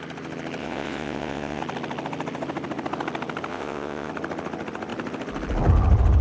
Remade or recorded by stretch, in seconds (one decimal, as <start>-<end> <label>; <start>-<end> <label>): 0.0-0.6 recorded; 0.6-1.6 remade; 1.6-3.5 recorded; 3.5-4.1 remade; 4.1-6.2 recorded